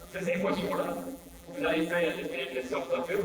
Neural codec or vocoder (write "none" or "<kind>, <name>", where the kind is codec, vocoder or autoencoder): vocoder, BigVGAN v2